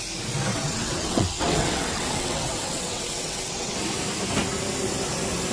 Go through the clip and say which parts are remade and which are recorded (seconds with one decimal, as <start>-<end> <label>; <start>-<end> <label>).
0.0-0.5 recorded; 0.5-3.8 remade; 3.8-5.5 recorded